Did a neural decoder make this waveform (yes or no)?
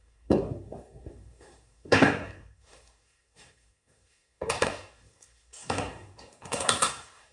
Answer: yes